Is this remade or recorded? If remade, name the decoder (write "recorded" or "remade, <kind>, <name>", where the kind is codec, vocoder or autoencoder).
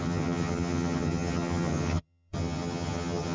remade, vocoder, HiFi-GAN